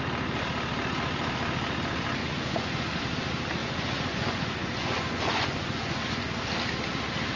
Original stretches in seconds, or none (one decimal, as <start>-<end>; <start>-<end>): 0.0-2.2; 3.0-3.6; 6.3-7.4